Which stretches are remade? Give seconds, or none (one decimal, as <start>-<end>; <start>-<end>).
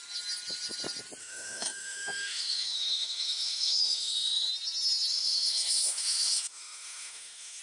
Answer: 1.2-4.5; 5.1-7.6